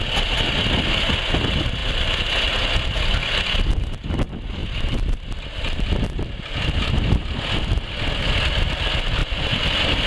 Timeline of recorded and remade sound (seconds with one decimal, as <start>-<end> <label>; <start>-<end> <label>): 0.0-1.8 recorded; 1.8-2.5 remade; 2.5-4.6 recorded; 4.6-6.7 remade; 6.7-9.2 recorded; 9.2-10.1 remade